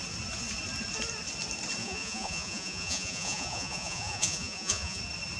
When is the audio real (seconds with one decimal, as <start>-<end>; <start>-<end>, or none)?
0.0-1.8; 5.0-5.4